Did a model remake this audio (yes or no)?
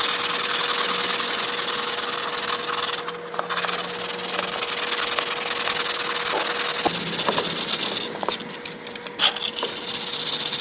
no